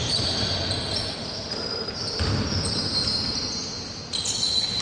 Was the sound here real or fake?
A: real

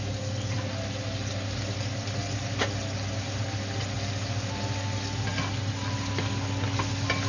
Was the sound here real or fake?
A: real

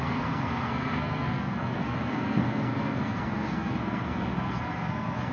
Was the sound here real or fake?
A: fake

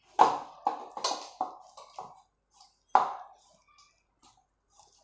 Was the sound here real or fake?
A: real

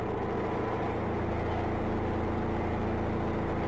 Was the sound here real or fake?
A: real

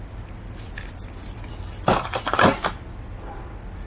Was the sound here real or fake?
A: real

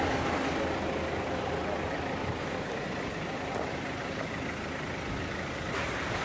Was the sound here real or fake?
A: real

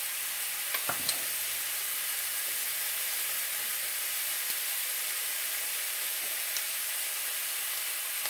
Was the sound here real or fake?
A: real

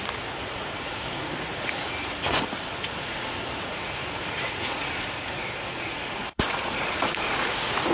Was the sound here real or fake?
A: fake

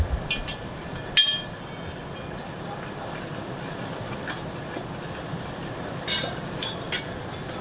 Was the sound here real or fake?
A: real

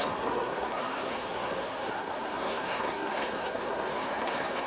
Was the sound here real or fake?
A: fake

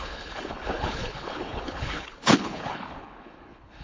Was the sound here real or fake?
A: fake